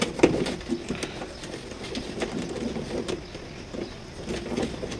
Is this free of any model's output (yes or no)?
no